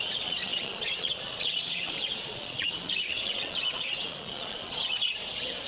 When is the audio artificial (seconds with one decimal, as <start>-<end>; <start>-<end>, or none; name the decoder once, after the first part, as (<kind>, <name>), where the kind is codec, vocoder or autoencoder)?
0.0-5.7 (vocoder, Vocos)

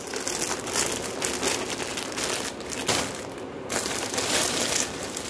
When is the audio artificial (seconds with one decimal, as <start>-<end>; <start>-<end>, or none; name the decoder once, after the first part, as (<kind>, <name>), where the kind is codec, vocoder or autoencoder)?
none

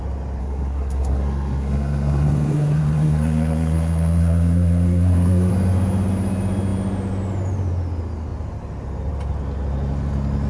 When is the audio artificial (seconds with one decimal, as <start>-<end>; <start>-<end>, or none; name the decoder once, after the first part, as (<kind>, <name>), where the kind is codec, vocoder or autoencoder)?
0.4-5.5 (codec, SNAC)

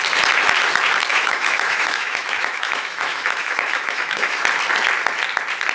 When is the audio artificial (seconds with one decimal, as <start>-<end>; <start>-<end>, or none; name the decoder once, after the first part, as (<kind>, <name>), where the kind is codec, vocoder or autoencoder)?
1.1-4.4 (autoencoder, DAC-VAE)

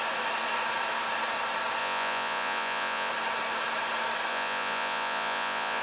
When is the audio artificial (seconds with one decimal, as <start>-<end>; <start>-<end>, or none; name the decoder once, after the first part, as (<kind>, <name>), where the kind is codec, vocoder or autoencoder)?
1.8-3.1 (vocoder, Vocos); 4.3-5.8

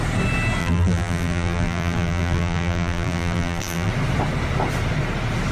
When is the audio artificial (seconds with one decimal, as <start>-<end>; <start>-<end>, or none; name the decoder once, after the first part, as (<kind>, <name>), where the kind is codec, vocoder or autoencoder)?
0.6-3.9 (vocoder, BigVGAN v2)

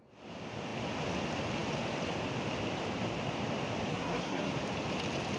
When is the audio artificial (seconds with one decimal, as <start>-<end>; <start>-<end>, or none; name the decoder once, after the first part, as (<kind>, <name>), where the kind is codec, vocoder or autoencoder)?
3.9-4.5 (codec, SNAC)

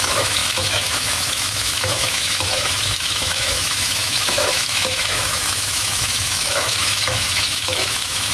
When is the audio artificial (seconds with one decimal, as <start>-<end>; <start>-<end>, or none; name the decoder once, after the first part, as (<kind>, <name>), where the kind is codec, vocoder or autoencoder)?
0.0-8.3 (autoencoder, DAC-VAE)